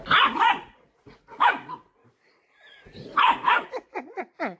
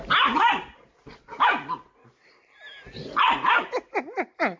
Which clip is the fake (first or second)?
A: first